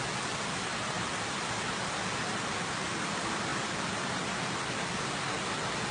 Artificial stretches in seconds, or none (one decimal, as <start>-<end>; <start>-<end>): none